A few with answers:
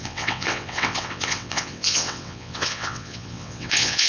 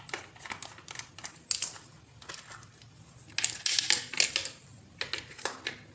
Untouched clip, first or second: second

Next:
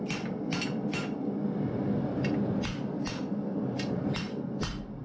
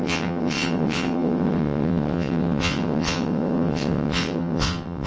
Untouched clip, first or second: first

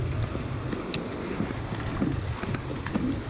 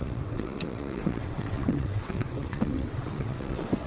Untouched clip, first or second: first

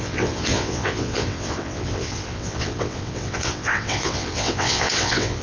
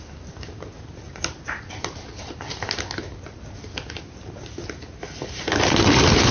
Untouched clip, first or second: second